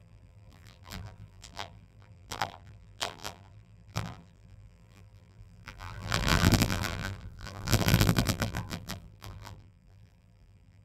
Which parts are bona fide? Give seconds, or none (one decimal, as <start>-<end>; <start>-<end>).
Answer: none